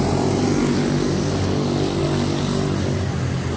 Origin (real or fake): real